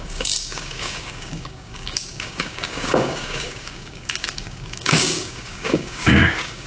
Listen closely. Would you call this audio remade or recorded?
remade